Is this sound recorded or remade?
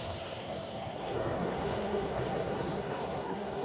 remade